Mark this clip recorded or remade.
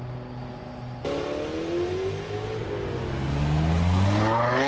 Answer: recorded